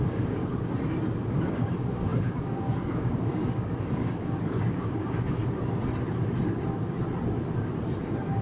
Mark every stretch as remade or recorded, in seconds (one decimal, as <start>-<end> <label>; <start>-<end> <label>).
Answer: 0.0-0.4 remade; 0.4-1.3 recorded; 1.3-5.4 remade; 5.4-8.0 recorded; 8.0-8.4 remade